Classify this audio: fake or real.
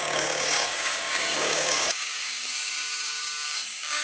fake